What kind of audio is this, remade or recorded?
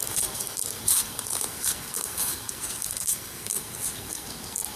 remade